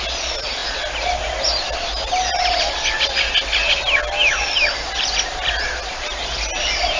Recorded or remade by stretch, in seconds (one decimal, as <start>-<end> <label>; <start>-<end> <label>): 0.0-7.0 recorded